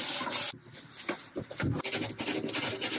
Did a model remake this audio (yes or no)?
no